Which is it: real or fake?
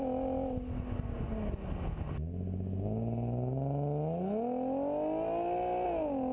real